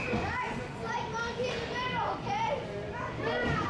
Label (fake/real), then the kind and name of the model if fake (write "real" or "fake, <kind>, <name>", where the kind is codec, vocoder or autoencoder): real